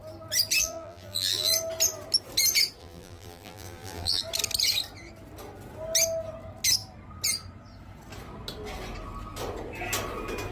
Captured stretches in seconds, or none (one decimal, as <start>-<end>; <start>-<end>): 0.0-0.6; 1.5-2.8; 4.2-10.5